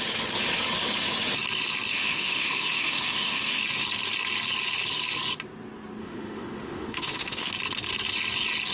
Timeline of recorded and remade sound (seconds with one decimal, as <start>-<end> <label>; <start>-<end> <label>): 0.0-1.9 recorded; 1.9-3.6 remade; 3.6-6.0 recorded; 6.0-7.5 remade; 7.5-8.7 recorded